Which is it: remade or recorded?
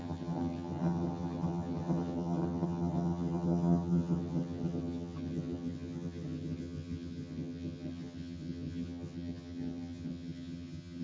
remade